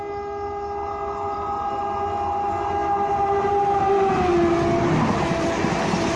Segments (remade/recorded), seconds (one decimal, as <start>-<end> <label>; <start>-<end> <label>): 0.0-6.2 recorded